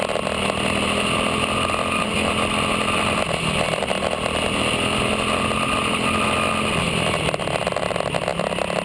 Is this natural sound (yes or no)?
yes